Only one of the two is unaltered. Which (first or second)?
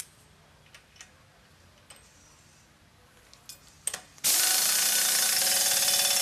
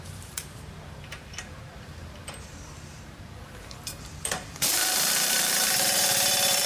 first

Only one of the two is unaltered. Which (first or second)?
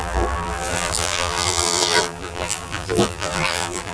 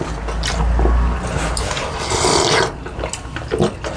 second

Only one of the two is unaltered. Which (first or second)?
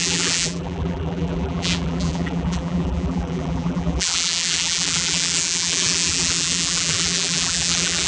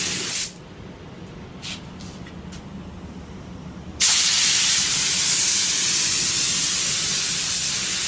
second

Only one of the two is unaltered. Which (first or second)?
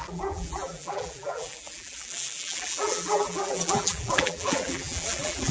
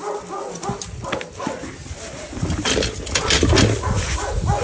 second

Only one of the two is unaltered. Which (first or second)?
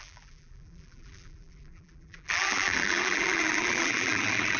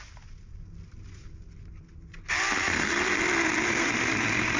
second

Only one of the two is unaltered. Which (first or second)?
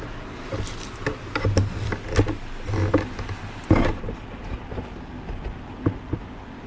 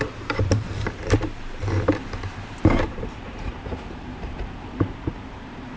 first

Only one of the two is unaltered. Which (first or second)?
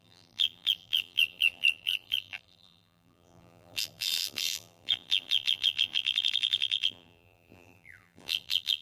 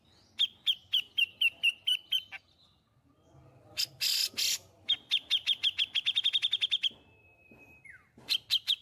second